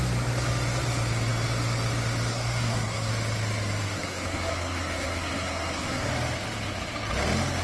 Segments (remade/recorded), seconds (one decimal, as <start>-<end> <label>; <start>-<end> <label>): 0.0-2.3 recorded; 2.3-3.1 remade; 3.1-3.8 recorded; 3.8-6.1 remade; 6.1-7.6 recorded